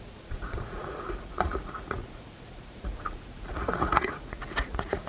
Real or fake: fake